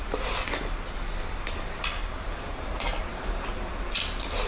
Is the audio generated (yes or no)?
no